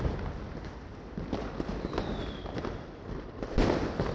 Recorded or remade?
recorded